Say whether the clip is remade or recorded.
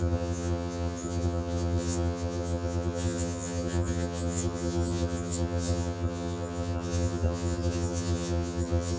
remade